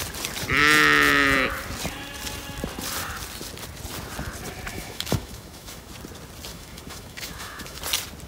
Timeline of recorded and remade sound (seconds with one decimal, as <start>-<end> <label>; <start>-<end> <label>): 0.0-4.7 recorded; 4.7-5.9 remade; 5.9-6.5 recorded; 6.5-7.8 remade; 7.8-8.3 recorded